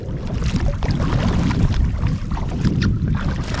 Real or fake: real